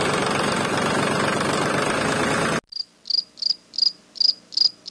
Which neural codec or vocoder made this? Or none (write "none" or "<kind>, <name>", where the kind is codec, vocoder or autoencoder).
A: none